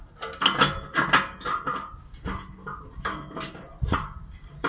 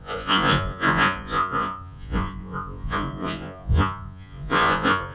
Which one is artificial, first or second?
second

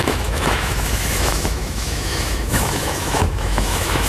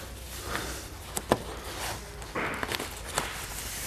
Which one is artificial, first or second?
first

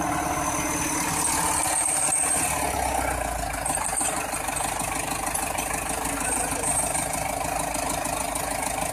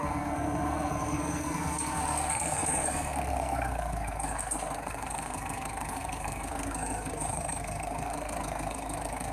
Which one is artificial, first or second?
second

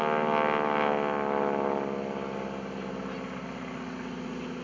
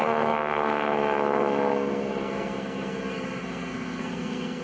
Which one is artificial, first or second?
second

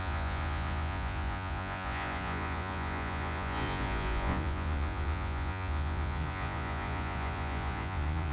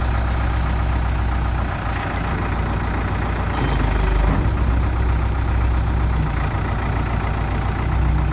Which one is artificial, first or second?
first